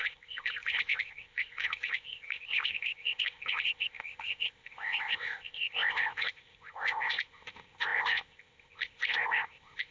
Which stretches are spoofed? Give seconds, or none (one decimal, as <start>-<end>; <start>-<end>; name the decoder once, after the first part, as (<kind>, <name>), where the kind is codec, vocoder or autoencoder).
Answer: 0.0-9.9 (codec, ZipCodec)